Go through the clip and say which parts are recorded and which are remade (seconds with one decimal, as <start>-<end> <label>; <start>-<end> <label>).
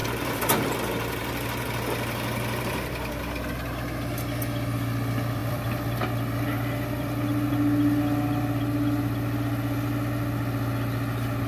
0.0-3.1 remade; 3.1-5.4 recorded; 5.4-7.5 remade; 7.5-11.5 recorded